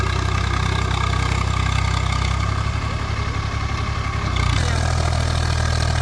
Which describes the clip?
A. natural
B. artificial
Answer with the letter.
A